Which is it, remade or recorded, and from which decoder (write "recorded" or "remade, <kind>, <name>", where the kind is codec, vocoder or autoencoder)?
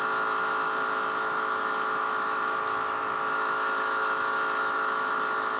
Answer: remade, autoencoder, DAC-VAE